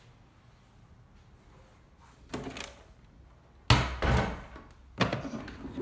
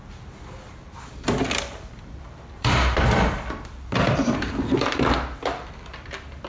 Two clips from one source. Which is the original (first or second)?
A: first